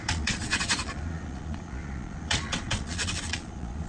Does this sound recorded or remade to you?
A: remade